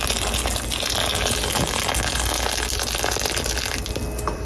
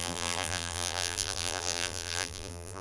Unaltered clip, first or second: first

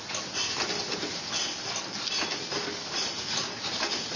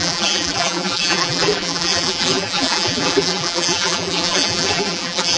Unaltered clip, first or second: first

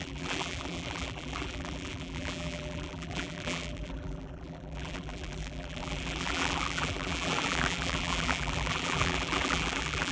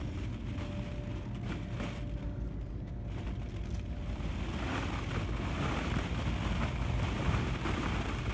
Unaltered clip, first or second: second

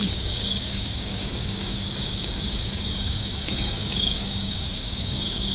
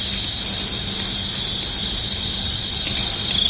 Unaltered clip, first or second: second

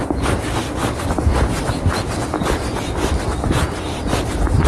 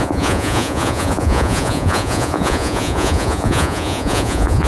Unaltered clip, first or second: first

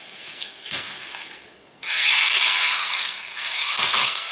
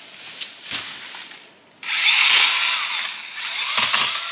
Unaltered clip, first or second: second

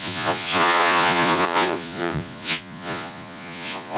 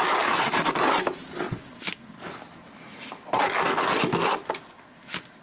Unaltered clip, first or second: second